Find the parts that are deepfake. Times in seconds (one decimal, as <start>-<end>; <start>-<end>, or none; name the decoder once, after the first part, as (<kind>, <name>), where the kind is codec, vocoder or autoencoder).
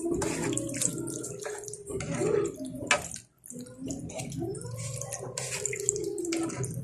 none